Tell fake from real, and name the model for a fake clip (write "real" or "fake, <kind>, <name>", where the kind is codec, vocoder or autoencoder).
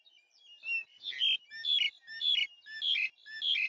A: real